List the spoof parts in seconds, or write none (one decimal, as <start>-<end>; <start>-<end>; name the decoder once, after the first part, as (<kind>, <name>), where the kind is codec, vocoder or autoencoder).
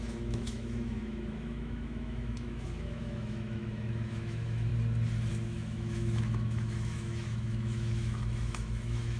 0.0-4.7 (autoencoder, DAC-VAE); 5.3-9.2